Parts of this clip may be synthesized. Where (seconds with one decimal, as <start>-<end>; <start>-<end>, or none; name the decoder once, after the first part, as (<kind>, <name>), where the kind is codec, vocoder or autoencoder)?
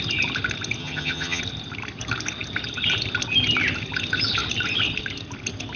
0.8-1.4 (vocoder, HiFi-GAN)